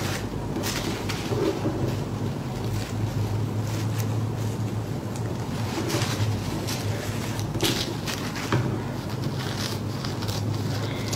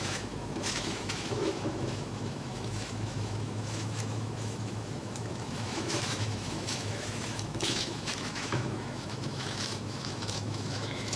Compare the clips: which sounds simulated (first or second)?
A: second